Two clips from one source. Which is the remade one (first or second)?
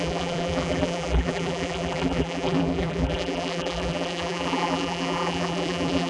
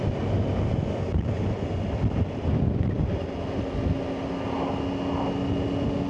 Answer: first